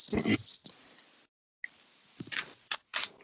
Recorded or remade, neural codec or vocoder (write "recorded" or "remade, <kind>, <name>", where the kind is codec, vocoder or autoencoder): recorded